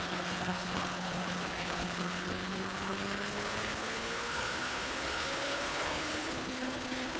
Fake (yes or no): yes